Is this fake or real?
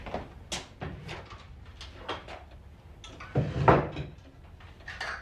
real